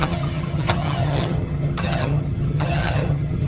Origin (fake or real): fake